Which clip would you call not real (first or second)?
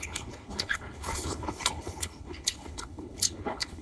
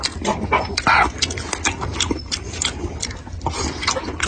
first